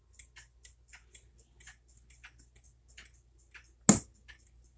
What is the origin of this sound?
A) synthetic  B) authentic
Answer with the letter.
B